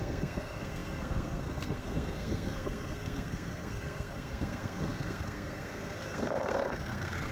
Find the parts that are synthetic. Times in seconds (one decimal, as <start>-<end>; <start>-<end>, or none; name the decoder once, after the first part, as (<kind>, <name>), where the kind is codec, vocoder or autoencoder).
0.0-7.3 (codec, SNAC)